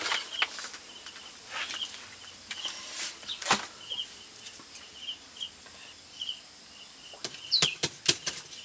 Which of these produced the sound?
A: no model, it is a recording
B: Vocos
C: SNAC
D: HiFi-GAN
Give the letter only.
A